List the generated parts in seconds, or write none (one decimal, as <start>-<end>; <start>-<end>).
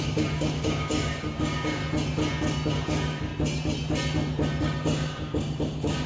0.0-1.8; 2.7-3.3; 4.6-6.1